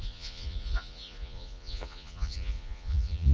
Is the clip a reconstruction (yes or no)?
yes